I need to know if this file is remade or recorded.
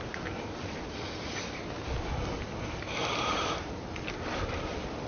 recorded